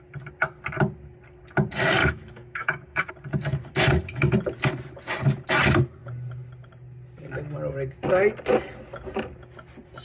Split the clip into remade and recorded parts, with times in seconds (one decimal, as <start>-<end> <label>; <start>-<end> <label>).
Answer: 0.0-2.0 recorded; 2.0-3.1 remade; 3.1-10.0 recorded